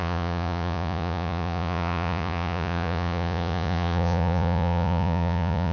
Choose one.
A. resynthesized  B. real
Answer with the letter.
A